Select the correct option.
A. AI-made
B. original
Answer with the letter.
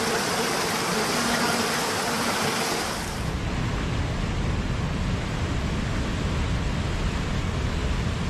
B